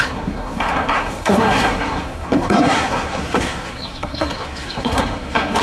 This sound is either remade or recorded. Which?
remade